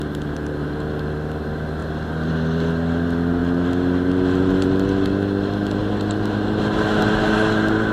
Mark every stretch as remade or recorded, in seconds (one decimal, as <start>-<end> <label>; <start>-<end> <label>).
0.0-7.9 recorded